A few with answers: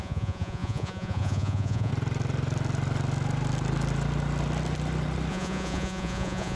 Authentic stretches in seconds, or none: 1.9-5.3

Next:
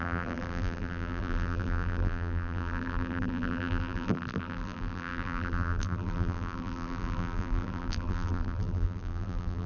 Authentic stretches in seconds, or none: none

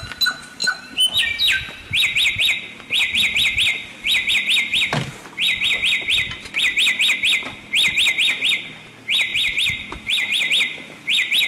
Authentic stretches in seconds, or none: 0.0-9.3; 10.5-11.5

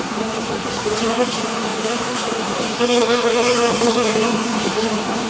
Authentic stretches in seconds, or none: none

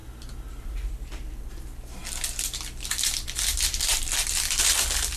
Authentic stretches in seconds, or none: 0.0-5.2